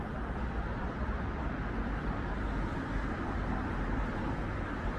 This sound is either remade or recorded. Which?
recorded